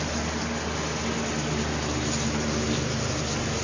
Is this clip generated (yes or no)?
no